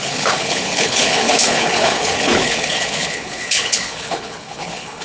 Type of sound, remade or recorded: remade